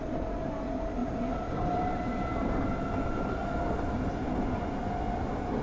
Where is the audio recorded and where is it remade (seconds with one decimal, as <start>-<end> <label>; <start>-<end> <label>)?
0.0-1.0 recorded; 1.0-2.7 remade; 2.7-5.6 recorded